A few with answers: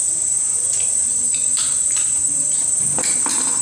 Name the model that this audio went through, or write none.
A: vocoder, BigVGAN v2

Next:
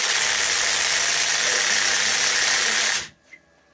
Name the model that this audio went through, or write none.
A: none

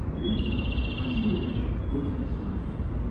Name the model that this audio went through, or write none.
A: none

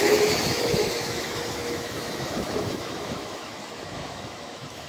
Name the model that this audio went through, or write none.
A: autoencoder, DAC-VAE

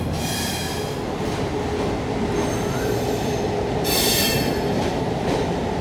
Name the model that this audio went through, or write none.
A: none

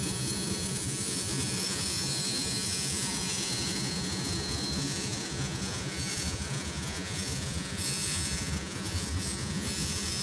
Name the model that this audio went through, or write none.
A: vocoder, Vocos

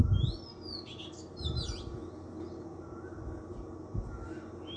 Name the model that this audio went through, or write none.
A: none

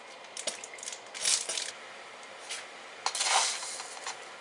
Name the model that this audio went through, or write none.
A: none